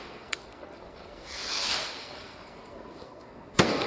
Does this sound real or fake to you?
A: fake